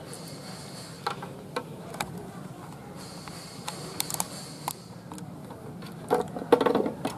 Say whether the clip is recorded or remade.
recorded